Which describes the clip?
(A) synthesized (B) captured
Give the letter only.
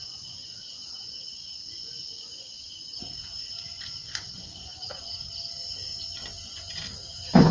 A